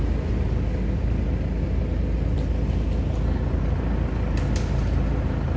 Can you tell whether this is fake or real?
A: real